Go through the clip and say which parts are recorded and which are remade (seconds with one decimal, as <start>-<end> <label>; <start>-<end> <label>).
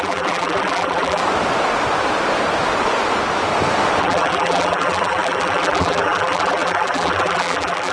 0.0-1.2 remade; 1.2-4.0 recorded; 4.0-7.9 remade